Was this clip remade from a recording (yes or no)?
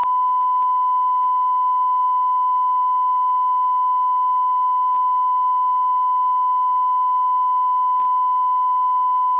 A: no